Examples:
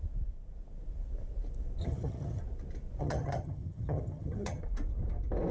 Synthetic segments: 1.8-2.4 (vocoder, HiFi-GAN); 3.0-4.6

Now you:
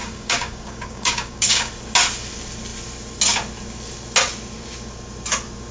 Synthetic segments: 0.0-1.7 (codec, DAC)